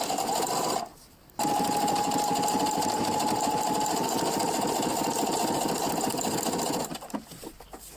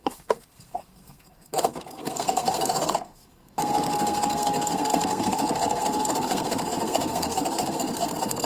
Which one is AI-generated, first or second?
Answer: second